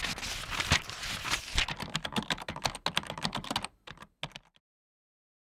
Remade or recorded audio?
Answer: recorded